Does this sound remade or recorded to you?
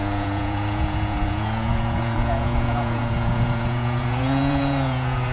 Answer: remade